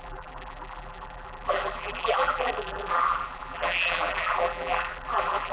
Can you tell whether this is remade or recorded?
remade